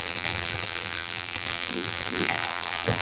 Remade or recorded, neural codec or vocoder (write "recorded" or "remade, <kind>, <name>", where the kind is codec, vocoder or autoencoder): remade, vocoder, BigVGAN v2